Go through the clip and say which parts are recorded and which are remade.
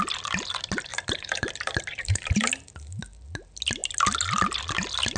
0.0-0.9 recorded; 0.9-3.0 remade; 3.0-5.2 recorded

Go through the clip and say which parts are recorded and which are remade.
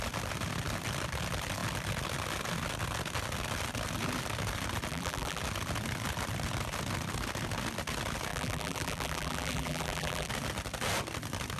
0.0-4.9 recorded; 4.9-5.4 remade; 5.4-8.3 recorded; 8.3-10.3 remade; 10.3-11.6 recorded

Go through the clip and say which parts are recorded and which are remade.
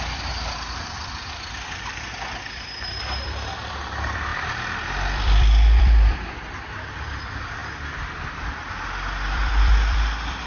0.0-7.6 remade; 7.6-8.7 recorded; 8.7-10.5 remade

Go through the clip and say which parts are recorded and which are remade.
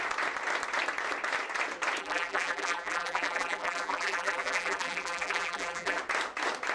0.0-2.0 recorded; 2.0-6.0 remade; 6.0-6.7 recorded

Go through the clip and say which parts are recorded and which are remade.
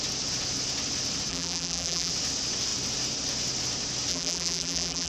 0.0-1.3 recorded; 1.3-2.1 remade; 2.1-4.1 recorded; 4.1-5.1 remade